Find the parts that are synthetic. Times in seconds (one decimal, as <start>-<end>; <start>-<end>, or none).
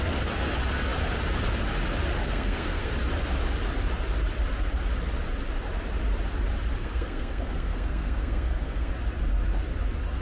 2.2-2.9; 6.8-8.9